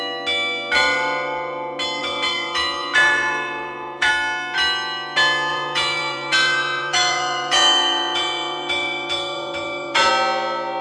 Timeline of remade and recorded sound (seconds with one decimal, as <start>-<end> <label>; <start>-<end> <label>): 0.0-2.0 recorded; 2.0-4.1 remade; 4.1-5.5 recorded; 5.5-10.1 remade; 10.1-10.8 recorded